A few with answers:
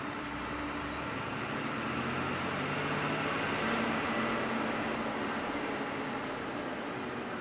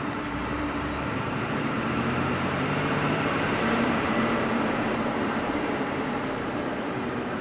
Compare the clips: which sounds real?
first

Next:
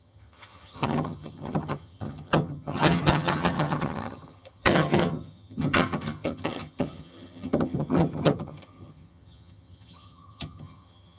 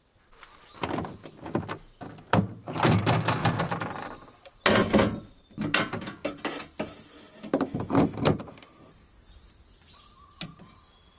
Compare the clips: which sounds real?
second